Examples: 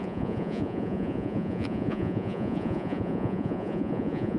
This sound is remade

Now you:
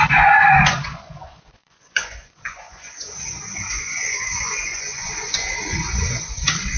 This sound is remade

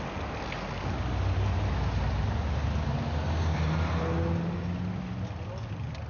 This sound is recorded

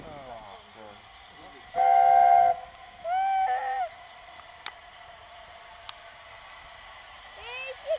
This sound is recorded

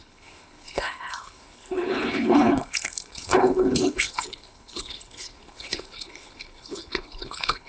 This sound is remade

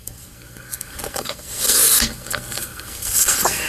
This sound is remade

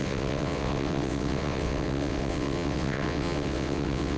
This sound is remade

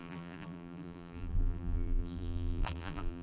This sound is remade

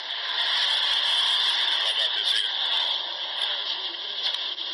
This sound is recorded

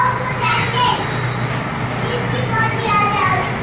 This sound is recorded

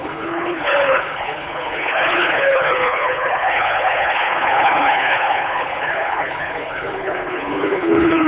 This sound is remade